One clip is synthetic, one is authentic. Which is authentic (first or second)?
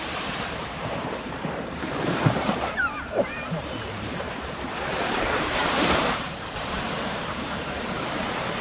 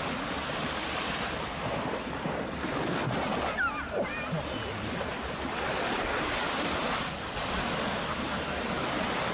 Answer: second